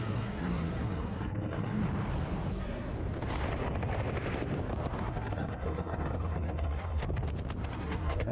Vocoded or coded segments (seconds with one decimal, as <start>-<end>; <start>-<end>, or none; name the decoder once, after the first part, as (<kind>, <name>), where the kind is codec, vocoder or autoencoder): 0.0-1.8 (codec, SNAC); 2.5-2.9; 5.0-7.0; 7.7-8.3